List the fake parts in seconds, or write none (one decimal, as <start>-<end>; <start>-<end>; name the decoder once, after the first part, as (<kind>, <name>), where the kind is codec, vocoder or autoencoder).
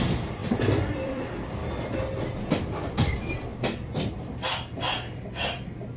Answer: 0.0-3.5 (vocoder, BigVGAN v2); 4.0-6.0